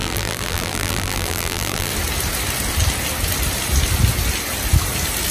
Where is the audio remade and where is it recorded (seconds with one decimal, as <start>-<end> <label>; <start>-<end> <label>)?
0.0-1.9 remade; 1.9-5.3 recorded